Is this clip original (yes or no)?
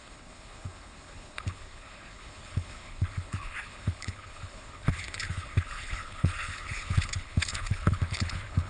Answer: no